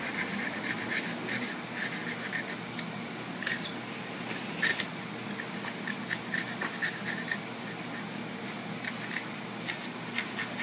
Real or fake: real